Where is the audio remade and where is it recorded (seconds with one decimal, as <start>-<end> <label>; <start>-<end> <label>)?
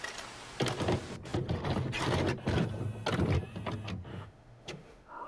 0.0-4.1 recorded; 4.1-5.3 remade